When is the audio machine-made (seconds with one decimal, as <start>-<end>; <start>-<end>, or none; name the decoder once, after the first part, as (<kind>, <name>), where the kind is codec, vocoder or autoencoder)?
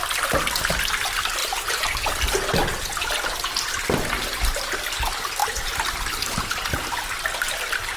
1.4-2.1 (vocoder, BigVGAN v2); 2.6-3.1; 5.4-6.7